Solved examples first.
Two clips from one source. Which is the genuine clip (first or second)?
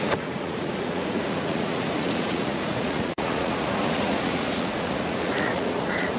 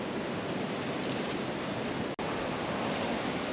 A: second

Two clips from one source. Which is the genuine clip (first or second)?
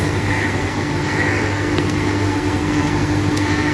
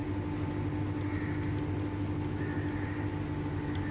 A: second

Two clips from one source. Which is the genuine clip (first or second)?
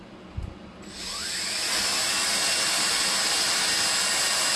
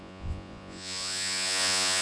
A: first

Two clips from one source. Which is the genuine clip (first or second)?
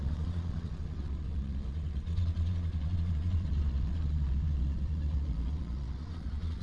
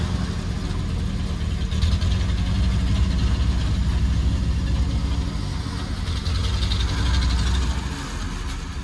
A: second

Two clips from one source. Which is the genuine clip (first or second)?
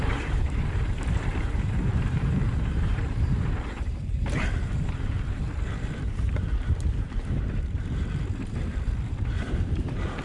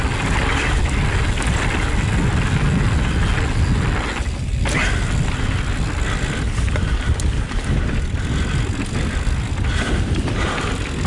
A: second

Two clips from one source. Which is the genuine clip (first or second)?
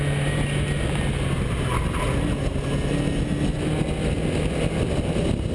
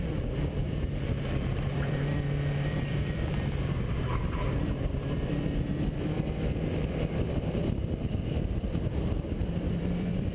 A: first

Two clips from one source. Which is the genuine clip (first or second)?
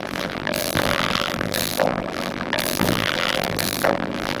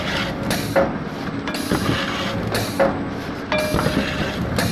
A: second